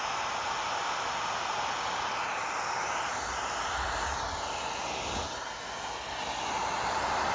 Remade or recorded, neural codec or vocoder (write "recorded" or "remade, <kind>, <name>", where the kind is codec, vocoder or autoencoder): recorded